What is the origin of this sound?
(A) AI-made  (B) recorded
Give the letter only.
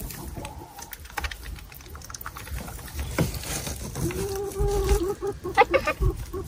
B